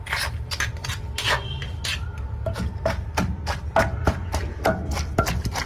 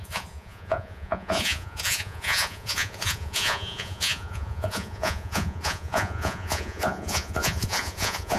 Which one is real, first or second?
first